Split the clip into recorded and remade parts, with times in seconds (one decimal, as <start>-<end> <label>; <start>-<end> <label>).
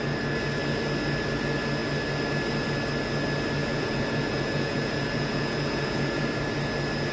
0.0-3.6 recorded; 3.6-6.2 remade; 6.2-7.1 recorded